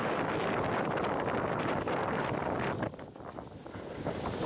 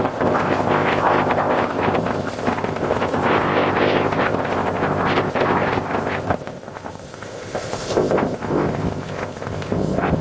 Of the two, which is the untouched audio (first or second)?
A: first